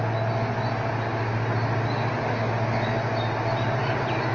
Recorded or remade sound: recorded